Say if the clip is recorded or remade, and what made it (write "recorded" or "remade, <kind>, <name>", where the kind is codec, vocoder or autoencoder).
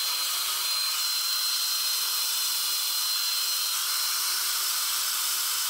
remade, vocoder, BigVGAN v2